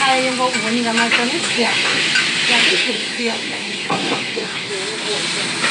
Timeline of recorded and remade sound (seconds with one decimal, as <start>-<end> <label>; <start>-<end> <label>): 0.0-1.4 recorded; 1.4-2.0 remade; 2.0-2.7 recorded; 2.7-4.7 remade; 4.7-5.7 recorded